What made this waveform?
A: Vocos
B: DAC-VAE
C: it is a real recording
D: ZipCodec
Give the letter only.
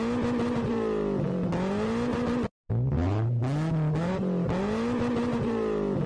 C